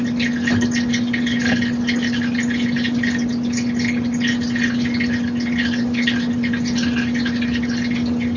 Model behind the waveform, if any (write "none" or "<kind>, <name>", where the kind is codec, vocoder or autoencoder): none